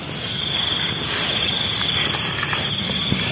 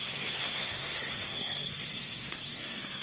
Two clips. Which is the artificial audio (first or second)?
second